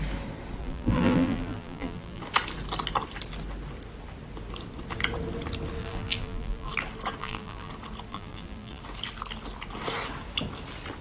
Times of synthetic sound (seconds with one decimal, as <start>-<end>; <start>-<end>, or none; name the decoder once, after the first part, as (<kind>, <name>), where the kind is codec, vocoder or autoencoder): 0.6-2.2 (vocoder, BigVGAN v2); 5.8-6.7; 7.2-7.7; 8.1-8.8

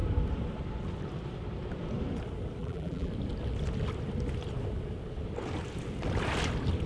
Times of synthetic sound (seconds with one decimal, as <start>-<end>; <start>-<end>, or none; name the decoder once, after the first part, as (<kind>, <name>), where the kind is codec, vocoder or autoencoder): 2.6-3.1 (vocoder, BigVGAN v2)

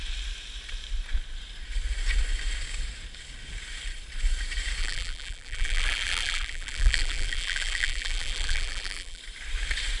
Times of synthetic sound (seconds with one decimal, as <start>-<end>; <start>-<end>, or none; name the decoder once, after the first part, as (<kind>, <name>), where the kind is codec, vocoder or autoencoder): 4.8-9.2 (vocoder, BigVGAN v2)

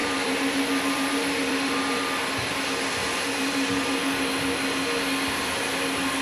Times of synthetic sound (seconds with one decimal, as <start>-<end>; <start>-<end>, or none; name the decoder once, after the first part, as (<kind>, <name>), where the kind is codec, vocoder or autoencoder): 0.0-2.0 (vocoder, BigVGAN v2); 3.0-3.9

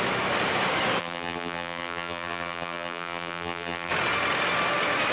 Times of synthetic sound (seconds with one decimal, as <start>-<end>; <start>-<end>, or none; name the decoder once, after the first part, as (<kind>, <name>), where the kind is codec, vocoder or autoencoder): 1.0-3.9 (vocoder, BigVGAN v2)

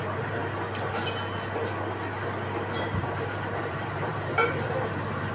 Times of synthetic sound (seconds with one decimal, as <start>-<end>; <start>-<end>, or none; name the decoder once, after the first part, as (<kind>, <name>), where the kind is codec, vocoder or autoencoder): 0.0-0.4 (vocoder, BigVGAN v2); 2.8-5.3

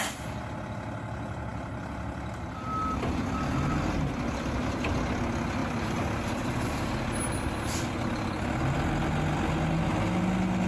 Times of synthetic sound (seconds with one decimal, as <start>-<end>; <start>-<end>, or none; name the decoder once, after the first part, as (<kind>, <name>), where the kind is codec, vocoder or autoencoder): none